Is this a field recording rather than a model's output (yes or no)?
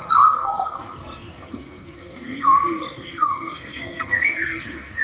no